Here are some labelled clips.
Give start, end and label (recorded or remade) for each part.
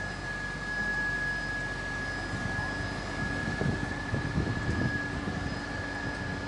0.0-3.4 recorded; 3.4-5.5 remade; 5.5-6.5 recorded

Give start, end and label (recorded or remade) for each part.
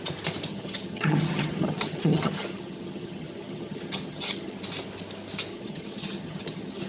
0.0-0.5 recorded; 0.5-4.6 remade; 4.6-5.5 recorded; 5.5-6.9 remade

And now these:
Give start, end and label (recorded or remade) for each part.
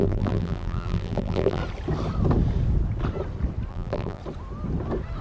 0.0-1.6 remade; 1.6-3.7 recorded; 3.7-4.2 remade; 4.2-5.2 recorded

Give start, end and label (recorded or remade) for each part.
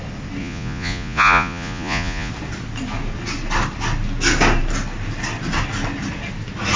0.0-0.4 recorded; 0.4-2.3 remade; 2.3-6.8 recorded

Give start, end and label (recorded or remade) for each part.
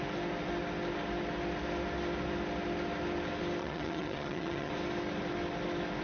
0.0-3.6 recorded; 3.6-4.7 remade; 4.7-6.0 recorded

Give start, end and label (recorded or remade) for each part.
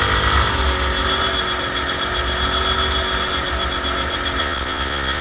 0.0-4.4 recorded; 4.4-5.2 remade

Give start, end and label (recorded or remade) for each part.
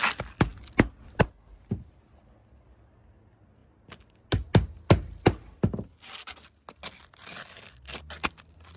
0.0-8.8 recorded